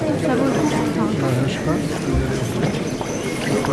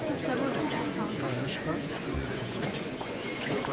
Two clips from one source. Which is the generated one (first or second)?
second